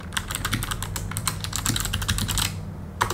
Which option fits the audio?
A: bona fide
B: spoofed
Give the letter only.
A